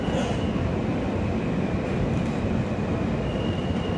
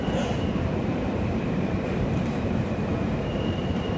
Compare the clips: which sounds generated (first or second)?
second